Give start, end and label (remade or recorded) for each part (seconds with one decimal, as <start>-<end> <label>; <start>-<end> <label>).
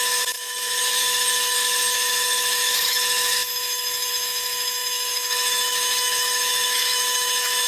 0.0-7.7 remade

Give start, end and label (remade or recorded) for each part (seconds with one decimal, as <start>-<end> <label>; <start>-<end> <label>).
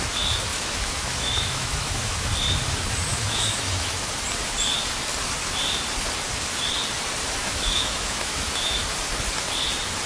0.0-0.5 recorded; 0.5-2.2 remade; 2.2-3.1 recorded; 3.1-3.9 remade; 3.9-7.4 recorded; 7.4-8.8 remade; 8.8-10.1 recorded